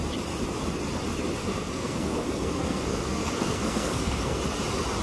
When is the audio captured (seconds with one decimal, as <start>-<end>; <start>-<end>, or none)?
0.0-1.4; 4.4-5.0